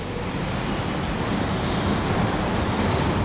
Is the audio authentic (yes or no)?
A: yes